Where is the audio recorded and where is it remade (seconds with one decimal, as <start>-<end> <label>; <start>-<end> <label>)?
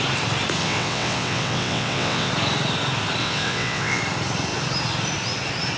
0.0-0.6 recorded; 0.6-2.3 remade; 2.3-3.2 recorded; 3.2-4.0 remade; 4.0-5.8 recorded